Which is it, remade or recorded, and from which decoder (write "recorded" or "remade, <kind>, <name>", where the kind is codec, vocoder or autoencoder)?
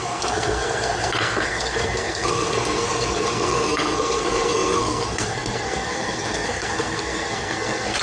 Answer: remade, codec, SNAC